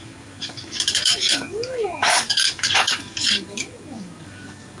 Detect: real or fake fake